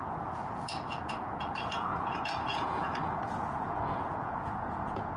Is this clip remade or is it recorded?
remade